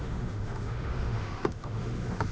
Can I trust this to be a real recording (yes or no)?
no